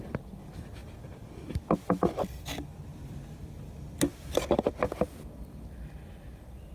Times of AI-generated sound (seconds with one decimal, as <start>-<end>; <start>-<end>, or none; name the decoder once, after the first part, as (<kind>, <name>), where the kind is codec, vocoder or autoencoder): none